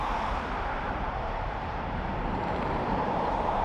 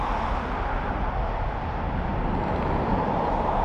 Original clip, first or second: second